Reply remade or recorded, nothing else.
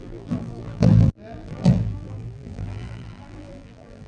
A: remade